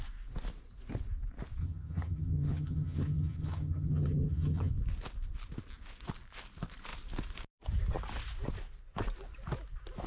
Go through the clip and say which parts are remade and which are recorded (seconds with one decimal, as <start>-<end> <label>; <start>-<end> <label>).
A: 0.0-1.6 recorded; 1.6-4.7 remade; 4.7-10.1 recorded